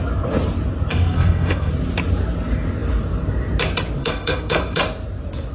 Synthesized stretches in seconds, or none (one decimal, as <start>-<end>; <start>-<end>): 0.9-1.7; 4.0-4.8